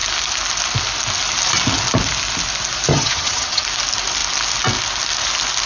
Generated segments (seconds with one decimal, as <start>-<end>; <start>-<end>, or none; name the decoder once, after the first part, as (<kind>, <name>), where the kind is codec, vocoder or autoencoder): 2.9-3.6 (vocoder, HiFi-GAN)

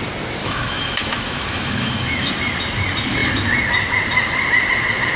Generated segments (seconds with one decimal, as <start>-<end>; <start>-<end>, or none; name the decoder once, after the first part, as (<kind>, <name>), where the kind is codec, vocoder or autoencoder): 0.4-2.3 (autoencoder, DAC-VAE)

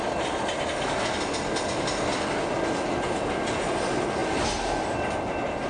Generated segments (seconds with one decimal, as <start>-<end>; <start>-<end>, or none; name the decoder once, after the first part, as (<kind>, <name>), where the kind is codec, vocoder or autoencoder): none

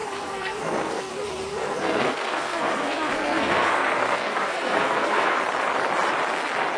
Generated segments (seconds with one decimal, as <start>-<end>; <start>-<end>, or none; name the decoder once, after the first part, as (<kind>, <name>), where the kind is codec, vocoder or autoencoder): 0.0-1.1 (codec, SNAC); 1.5-5.4

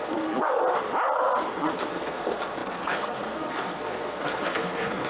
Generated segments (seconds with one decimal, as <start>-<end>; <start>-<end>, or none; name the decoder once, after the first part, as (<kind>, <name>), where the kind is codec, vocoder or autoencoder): 0.0-0.6 (codec, SNAC); 1.9-5.1

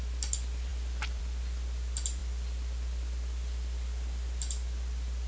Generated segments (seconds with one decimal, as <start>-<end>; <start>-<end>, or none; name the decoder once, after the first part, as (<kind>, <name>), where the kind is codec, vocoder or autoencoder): none

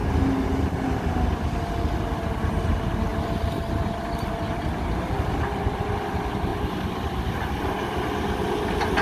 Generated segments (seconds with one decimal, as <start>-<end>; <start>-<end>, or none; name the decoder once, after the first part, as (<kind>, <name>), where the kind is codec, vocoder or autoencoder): 3.1-5.4 (vocoder, BigVGAN v2); 6.5-7.3